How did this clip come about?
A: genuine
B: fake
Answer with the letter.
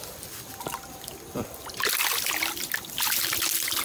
A